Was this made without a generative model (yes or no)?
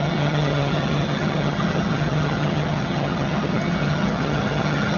no